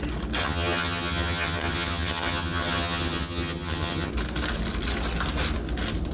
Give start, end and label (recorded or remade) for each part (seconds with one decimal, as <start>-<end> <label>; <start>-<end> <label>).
0.0-0.4 recorded; 0.4-4.1 remade; 4.1-6.1 recorded